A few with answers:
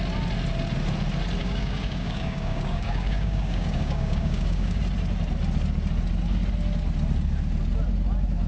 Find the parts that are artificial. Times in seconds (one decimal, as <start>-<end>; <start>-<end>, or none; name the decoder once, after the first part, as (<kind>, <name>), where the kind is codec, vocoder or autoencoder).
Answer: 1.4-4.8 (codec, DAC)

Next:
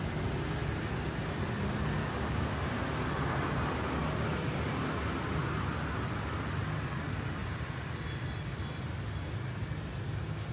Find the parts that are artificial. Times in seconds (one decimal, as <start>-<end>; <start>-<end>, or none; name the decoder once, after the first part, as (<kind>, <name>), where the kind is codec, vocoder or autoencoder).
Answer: 2.0-2.7 (codec, DAC)

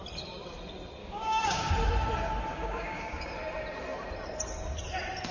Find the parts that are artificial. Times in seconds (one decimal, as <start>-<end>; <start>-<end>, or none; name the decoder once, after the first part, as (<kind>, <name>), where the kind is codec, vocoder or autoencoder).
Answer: 1.0-1.7 (codec, DAC); 2.5-3.3

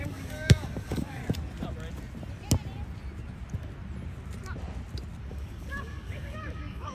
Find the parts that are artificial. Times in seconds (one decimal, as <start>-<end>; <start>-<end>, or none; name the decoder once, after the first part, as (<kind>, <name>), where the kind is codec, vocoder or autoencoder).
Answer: 0.0-1.2 (codec, DAC); 5.3-6.9

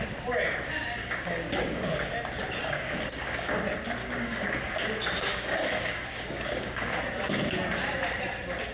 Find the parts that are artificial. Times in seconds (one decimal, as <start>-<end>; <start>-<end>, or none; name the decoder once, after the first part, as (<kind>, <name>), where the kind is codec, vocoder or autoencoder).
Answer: 1.0-2.1 (codec, DAC); 2.6-3.6; 4.0-7.0

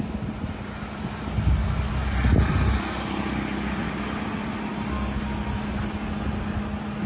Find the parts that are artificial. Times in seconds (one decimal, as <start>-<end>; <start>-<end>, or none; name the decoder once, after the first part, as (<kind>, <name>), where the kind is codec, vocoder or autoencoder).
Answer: none

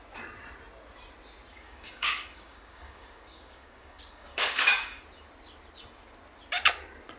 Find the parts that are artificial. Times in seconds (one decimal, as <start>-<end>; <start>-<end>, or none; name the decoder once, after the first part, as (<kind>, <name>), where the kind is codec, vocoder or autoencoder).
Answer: 1.5-5.0 (codec, DAC)